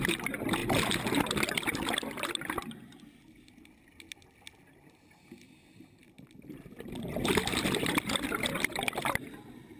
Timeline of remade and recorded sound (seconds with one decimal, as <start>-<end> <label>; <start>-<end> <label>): 0.0-6.0 recorded; 6.0-8.7 remade; 8.7-9.8 recorded

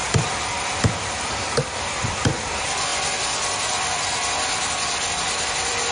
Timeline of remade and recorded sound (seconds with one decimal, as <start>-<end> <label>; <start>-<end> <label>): 0.0-2.9 remade; 2.9-5.2 recorded; 5.2-5.9 remade

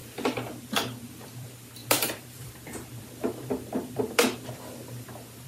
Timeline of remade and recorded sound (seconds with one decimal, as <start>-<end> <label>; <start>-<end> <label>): 0.0-0.6 recorded; 0.6-5.5 remade

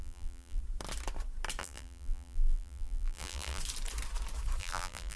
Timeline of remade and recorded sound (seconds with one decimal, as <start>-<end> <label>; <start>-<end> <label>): 0.0-0.6 remade; 0.6-1.6 recorded; 1.6-3.6 remade; 3.6-4.6 recorded; 4.6-5.2 remade